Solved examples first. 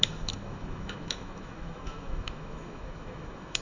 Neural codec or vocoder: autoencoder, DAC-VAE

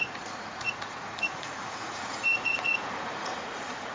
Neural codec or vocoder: vocoder, Vocos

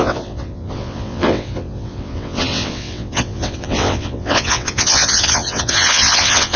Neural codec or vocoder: vocoder, WaveNeXt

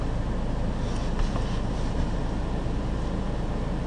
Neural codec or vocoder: none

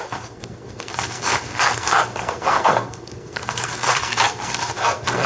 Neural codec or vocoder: codec, SNAC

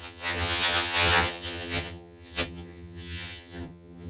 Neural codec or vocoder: vocoder, HiFi-GAN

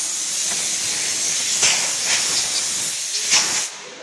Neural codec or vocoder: none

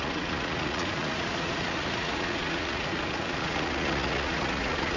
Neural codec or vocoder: vocoder, Vocos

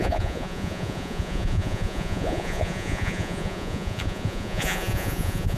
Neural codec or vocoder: vocoder, Vocos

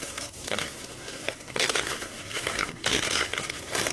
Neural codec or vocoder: codec, SNAC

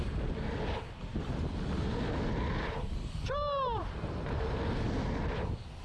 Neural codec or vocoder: none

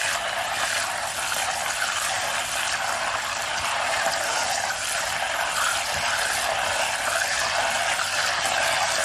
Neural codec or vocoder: none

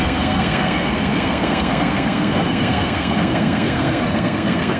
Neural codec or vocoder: codec, SNAC